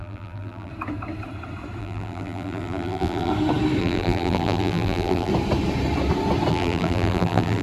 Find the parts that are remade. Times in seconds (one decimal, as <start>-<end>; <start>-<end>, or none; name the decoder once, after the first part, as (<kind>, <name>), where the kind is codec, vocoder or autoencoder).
0.0-0.7 (vocoder, BigVGAN v2); 1.8-3.3; 3.8-5.3; 6.5-7.6

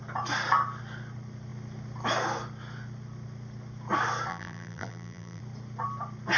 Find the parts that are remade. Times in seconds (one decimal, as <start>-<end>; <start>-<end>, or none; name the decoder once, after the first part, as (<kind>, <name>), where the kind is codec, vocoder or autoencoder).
4.3-5.4 (vocoder, BigVGAN v2)